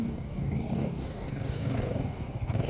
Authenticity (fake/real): fake